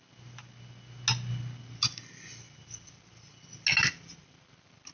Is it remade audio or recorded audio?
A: recorded